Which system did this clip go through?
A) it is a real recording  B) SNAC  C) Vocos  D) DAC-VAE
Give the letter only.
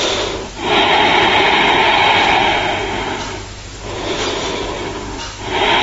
A